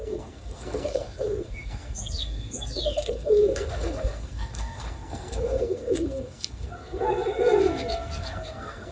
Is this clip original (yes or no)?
no